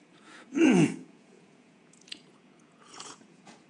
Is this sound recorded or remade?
remade